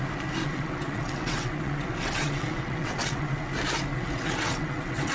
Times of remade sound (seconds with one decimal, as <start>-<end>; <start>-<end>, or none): 0.4-3.5; 3.9-5.1